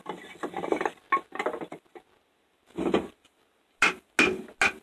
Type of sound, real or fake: real